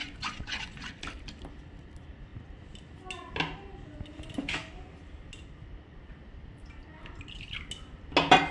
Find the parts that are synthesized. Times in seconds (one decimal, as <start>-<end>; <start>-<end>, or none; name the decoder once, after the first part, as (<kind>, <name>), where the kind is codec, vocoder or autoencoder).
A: 0.0-0.9 (vocoder, Vocos)